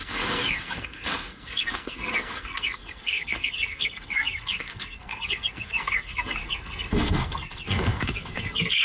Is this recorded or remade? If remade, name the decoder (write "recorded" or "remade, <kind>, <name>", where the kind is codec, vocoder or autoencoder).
remade, codec, SNAC